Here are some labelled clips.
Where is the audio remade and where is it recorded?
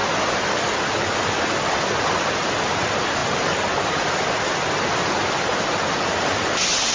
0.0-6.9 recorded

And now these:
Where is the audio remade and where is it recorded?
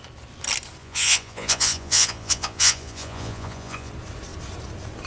0.0-0.8 recorded; 0.8-3.9 remade; 3.9-5.1 recorded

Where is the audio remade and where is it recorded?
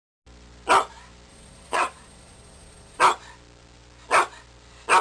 0.0-1.3 recorded; 1.3-3.0 remade; 3.0-5.0 recorded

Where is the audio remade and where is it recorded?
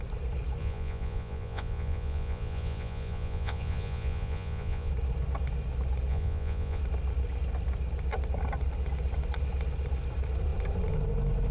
0.0-0.6 recorded; 0.6-4.9 remade; 4.9-6.1 recorded; 6.1-6.8 remade; 6.8-11.5 recorded